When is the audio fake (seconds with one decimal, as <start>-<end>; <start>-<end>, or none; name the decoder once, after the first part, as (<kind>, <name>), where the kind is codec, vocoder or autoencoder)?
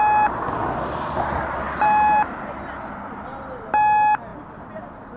none